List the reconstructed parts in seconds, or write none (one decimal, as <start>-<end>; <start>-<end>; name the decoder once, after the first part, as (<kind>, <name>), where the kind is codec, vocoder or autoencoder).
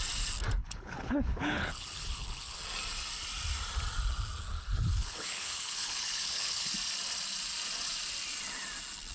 0.6-2.6 (codec, HILCodec); 4.5-6.7